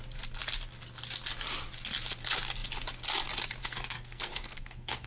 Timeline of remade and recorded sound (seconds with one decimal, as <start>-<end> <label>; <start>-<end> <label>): 0.0-3.6 recorded; 3.6-5.1 remade